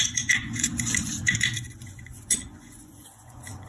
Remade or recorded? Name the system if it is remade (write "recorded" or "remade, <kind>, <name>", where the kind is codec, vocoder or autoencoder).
remade, vocoder, Vocos